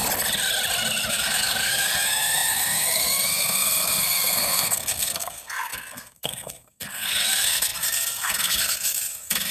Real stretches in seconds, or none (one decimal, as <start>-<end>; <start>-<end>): 0.0-1.1